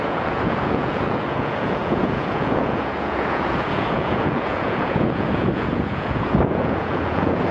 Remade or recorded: remade